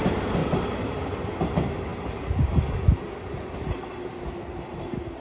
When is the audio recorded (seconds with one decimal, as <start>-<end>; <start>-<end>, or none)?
0.0-5.2